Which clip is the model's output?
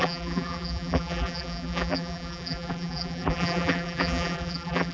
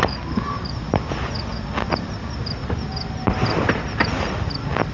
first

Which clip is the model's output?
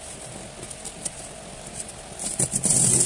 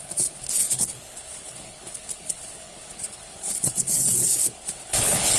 second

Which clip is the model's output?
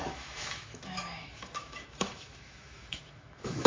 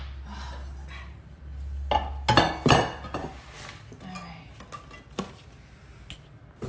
first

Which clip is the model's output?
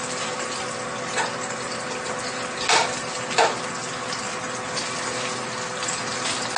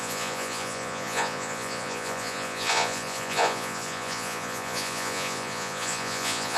second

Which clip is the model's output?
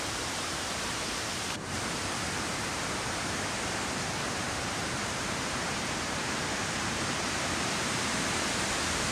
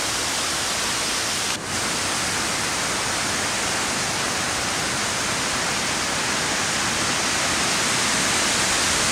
first